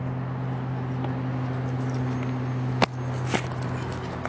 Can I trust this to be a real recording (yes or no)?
yes